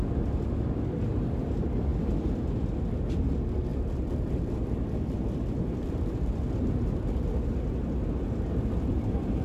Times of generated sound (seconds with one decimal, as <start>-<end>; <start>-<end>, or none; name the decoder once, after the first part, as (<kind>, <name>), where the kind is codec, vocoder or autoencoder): 3.7-8.4 (vocoder, BigVGAN v2)